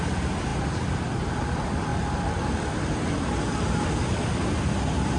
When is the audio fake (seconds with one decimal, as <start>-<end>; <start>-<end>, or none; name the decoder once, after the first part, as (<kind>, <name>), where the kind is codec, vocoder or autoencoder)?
none